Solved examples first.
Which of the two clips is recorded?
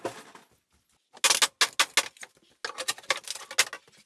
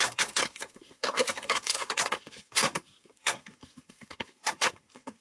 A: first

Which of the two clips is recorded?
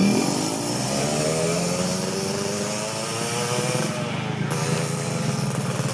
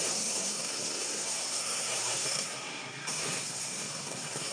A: first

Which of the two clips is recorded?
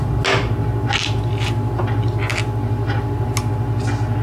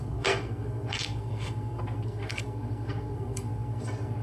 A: first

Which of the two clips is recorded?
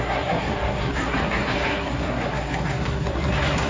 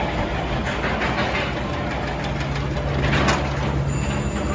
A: second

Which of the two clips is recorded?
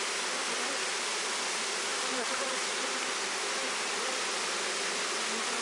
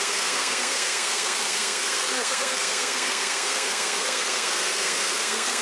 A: first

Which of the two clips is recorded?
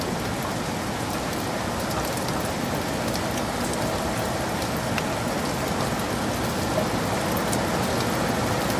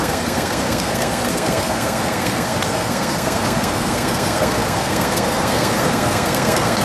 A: first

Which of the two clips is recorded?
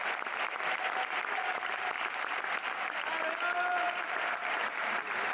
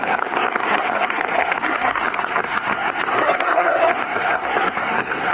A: first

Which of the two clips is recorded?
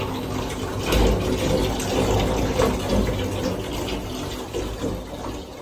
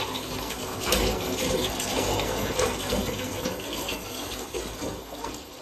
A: first